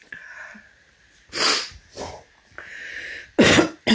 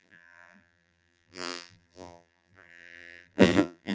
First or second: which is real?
first